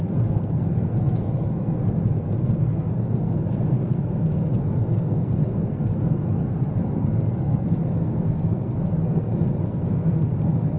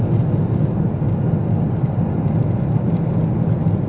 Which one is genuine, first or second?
second